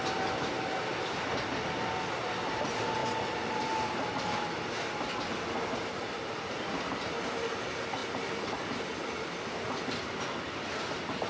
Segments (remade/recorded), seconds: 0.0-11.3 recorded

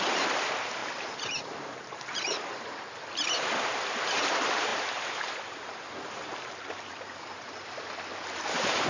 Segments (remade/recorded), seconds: 0.0-8.9 remade

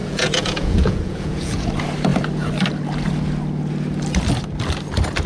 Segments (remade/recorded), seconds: 0.0-1.7 remade; 1.7-5.3 recorded

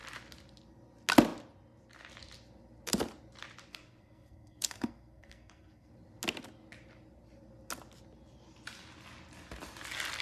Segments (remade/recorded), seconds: 0.0-3.7 recorded; 3.7-5.9 remade; 5.9-10.2 recorded

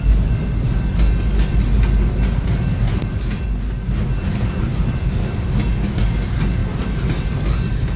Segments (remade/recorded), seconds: 0.0-8.0 recorded

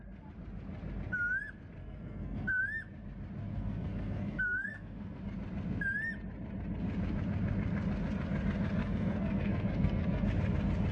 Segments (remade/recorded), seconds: 0.0-1.8 recorded; 1.8-2.6 remade; 2.6-3.5 recorded; 3.5-5.2 remade; 5.2-8.8 recorded; 8.8-10.3 remade; 10.3-10.9 recorded

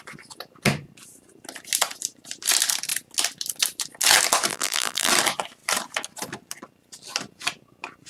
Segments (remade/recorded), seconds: 0.0-4.5 recorded; 4.5-5.1 remade; 5.1-8.1 recorded